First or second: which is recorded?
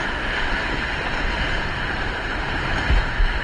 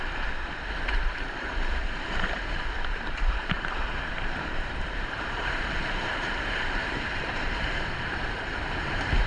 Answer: first